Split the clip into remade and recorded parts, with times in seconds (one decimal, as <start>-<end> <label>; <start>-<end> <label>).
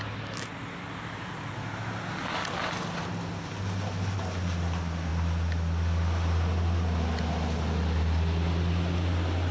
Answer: 0.0-9.5 recorded